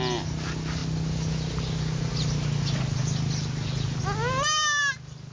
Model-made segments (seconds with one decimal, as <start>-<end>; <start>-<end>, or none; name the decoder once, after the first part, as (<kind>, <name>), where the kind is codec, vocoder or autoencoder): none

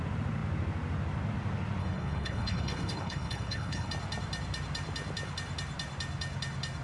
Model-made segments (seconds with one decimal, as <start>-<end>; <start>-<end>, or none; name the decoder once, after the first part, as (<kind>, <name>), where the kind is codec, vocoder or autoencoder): 1.8-3.9 (codec, HILCodec)

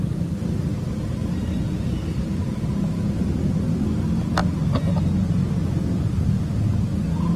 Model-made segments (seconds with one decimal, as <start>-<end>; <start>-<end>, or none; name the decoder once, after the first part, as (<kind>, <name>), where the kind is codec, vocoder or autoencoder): none

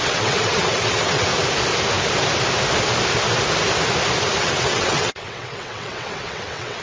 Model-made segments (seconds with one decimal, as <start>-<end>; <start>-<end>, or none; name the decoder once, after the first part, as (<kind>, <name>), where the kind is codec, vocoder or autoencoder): 0.0-1.3 (vocoder, WaveNeXt); 4.4-6.8

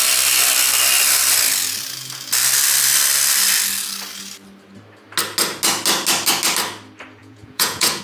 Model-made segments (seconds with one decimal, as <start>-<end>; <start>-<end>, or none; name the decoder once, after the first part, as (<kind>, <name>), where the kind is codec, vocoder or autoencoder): 7.2-8.0 (vocoder, Vocos)

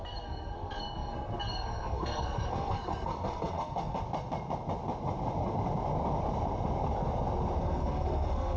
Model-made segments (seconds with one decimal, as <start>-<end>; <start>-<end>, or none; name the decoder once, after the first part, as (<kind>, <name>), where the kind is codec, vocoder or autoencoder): 0.0-4.0 (codec, SNAC); 7.6-8.6

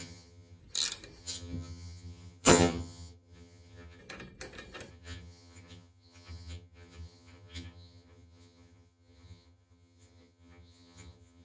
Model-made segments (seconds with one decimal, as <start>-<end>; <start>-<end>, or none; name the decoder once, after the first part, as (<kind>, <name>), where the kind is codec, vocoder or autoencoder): 0.0-0.6 (vocoder, HiFi-GAN); 1.2-4.0; 4.9-11.4

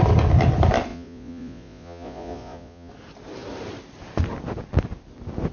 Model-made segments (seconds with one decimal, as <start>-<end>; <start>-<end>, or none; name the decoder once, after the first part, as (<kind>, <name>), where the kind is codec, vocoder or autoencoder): 0.9-2.9 (vocoder, Vocos)